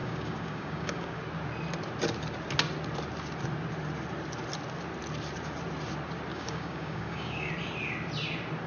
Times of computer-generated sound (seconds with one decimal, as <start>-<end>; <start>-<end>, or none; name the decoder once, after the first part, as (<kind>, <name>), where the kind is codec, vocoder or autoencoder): 0.0-1.2 (codec, DAC); 6.3-7.5